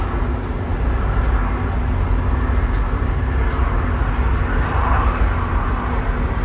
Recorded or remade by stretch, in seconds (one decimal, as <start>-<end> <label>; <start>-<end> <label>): 0.0-6.4 recorded